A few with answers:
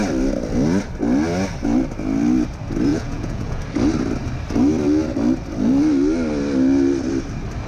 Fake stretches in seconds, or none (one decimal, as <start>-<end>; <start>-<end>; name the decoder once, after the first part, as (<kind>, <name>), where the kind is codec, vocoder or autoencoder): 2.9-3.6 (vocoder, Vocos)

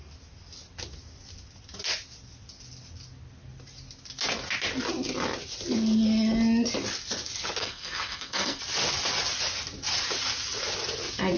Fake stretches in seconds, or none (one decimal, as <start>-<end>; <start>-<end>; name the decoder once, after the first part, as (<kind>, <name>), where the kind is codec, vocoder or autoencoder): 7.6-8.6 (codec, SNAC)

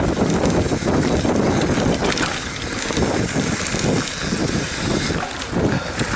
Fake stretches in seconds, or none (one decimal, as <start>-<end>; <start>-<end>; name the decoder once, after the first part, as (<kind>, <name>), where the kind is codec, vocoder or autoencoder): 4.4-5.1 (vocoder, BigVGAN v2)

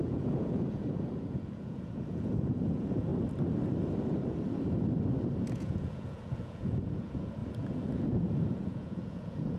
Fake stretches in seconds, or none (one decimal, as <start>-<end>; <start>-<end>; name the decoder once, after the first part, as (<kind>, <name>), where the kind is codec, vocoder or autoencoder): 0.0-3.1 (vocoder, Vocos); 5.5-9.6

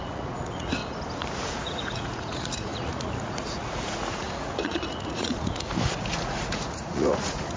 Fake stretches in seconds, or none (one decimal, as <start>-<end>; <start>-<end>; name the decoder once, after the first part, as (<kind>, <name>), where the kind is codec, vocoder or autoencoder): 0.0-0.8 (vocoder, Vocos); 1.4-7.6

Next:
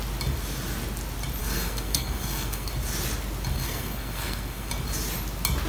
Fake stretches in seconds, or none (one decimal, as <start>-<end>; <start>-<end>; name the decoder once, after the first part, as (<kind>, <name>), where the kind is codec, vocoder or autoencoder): 1.4-2.7 (codec, SNAC); 3.5-4.7

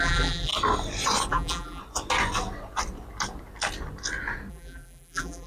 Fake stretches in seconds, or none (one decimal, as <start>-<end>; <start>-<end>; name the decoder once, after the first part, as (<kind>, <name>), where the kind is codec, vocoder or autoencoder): 0.0-0.5 (vocoder, BigVGAN v2); 1.3-1.8; 4.5-5.5

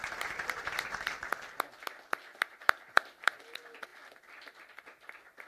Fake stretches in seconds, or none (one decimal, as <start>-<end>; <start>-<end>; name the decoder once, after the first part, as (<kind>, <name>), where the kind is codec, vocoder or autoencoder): 0.0-1.3 (vocoder, BigVGAN v2); 2.3-3.4